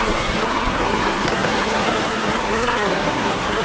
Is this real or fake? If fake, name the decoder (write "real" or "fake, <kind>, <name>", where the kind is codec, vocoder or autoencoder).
fake, codec, SNAC